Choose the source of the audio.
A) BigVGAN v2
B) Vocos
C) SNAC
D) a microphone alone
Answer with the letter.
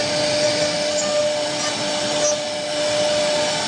D